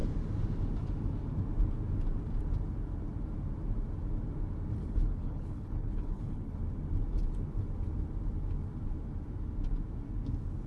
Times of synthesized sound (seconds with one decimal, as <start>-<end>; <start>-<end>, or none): 4.8-6.6